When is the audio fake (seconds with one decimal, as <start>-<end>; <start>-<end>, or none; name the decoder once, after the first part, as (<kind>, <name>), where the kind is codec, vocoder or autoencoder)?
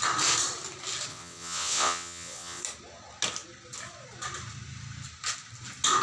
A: 1.1-2.6 (vocoder, WaveNeXt)